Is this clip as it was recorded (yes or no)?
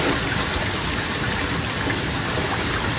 yes